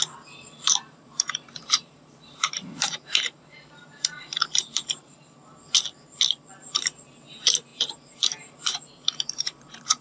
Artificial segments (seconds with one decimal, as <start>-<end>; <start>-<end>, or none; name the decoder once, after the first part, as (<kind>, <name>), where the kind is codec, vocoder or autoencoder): 0.0-5.4 (vocoder, BigVGAN v2); 6.6-10.0